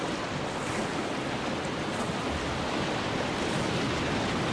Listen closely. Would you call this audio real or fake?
real